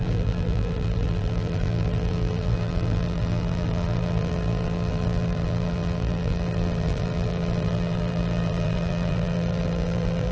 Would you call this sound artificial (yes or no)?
yes